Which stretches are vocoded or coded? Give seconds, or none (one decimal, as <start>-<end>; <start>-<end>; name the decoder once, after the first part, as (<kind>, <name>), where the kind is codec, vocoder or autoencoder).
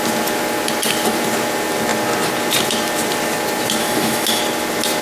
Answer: 3.8-4.4 (autoencoder, DAC-VAE)